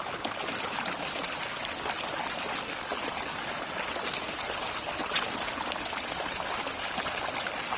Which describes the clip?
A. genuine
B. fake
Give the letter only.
A